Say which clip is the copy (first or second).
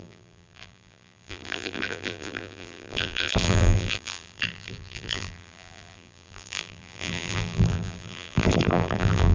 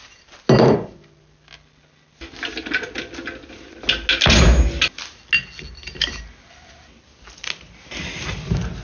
first